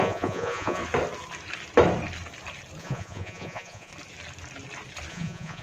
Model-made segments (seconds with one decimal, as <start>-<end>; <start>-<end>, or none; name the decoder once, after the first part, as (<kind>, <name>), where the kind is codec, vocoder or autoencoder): 0.0-0.8 (vocoder, Vocos); 2.8-3.9; 5.1-5.6